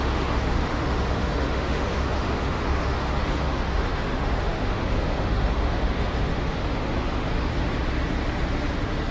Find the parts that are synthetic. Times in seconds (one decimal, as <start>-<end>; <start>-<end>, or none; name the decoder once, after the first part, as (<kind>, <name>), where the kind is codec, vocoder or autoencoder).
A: 0.0-7.5 (autoencoder, DAC-VAE)